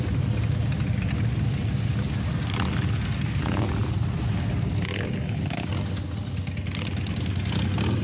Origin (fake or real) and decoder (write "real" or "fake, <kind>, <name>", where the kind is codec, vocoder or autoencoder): real